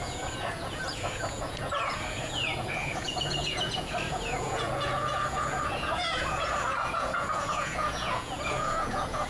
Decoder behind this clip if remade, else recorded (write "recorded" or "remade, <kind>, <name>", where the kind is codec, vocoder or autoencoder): remade, vocoder, Vocos